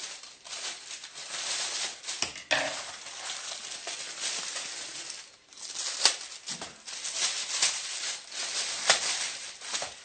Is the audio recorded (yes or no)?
yes